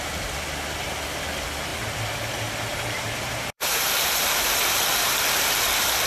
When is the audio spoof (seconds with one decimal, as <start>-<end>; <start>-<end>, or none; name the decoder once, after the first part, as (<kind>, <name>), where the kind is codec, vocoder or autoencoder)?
2.7-4.3 (vocoder, BigVGAN v2)